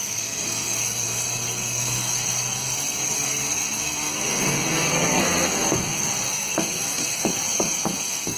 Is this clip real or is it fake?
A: fake